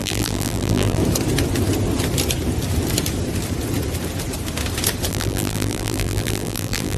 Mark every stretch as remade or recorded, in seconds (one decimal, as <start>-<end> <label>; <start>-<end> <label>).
0.0-1.0 remade; 1.0-5.1 recorded; 5.1-7.0 remade